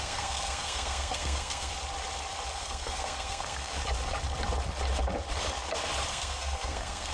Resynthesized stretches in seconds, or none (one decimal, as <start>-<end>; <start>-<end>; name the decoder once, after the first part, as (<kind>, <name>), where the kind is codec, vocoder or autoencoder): 0.0-1.7 (codec, SNAC); 2.6-3.7; 6.1-7.1